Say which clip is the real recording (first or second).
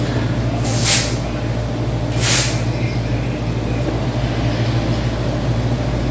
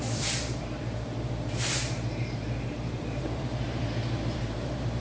first